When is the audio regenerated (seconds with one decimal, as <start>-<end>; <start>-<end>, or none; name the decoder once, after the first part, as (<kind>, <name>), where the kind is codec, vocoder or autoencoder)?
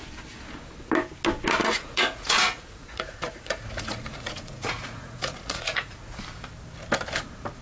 1.6-6.2 (vocoder, Vocos)